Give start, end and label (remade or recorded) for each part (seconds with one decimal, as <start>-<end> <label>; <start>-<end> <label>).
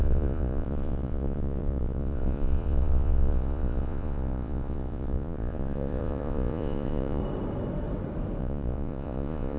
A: 0.0-7.2 remade; 7.2-8.4 recorded; 8.4-9.6 remade